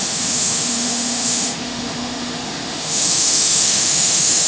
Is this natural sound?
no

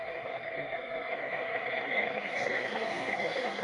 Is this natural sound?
no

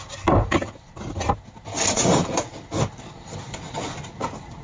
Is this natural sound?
yes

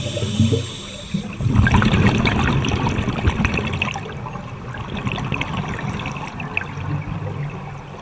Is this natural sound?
yes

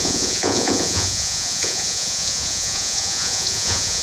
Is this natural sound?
no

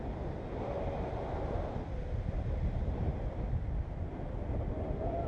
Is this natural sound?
yes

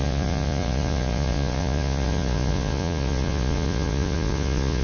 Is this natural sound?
no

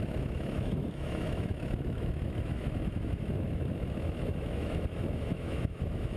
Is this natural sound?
no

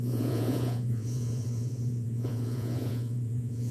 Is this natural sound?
no